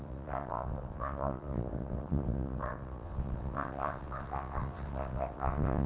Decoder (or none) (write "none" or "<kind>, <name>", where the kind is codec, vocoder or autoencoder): vocoder, WaveNeXt